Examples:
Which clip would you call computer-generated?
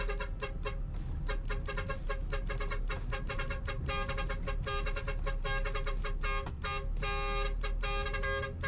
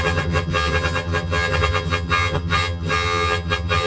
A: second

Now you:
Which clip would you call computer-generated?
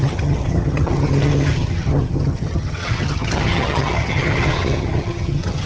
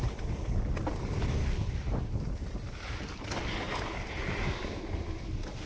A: first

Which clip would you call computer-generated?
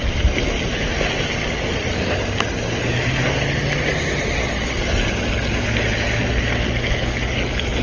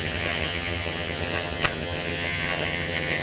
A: second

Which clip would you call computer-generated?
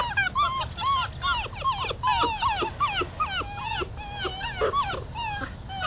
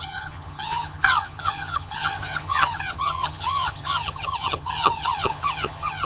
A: second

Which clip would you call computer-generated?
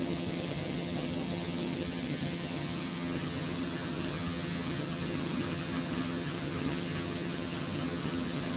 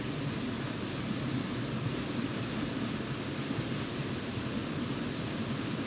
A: first